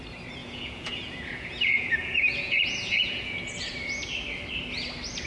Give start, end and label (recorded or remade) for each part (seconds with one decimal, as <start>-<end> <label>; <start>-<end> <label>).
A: 0.0-0.4 recorded; 0.4-3.6 remade; 3.6-5.3 recorded